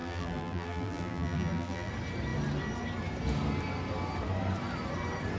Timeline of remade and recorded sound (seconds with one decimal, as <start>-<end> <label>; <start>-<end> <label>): 0.0-1.9 remade; 1.9-5.4 recorded